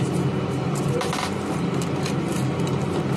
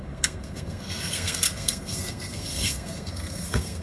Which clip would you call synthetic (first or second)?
second